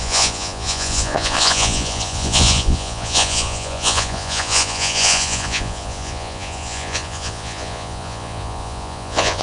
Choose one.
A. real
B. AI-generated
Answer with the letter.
B